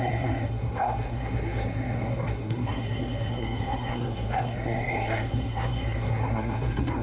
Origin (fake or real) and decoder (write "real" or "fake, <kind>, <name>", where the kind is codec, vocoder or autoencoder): fake, codec, SNAC